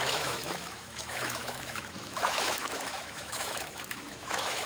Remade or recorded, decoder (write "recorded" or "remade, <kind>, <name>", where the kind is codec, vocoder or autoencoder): remade, autoencoder, DAC-VAE